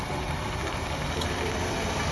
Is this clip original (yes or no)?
yes